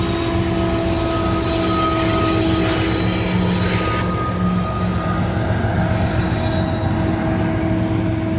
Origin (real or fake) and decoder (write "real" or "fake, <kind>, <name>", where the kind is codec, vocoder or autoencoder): real